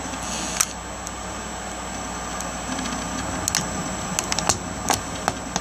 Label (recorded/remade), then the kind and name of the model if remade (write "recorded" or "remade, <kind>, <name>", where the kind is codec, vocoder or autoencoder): recorded